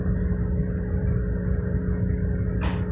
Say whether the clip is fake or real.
real